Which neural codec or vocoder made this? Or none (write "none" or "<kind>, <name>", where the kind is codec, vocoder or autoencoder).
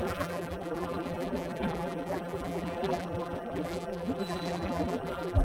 vocoder, BigVGAN v2